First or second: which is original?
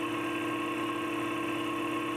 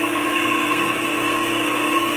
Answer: first